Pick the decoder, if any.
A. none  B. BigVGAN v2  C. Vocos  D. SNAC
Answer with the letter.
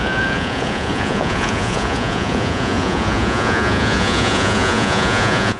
C